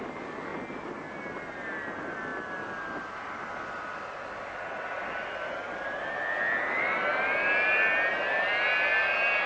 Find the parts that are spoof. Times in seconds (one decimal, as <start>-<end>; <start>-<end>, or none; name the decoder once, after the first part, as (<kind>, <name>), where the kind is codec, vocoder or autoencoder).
none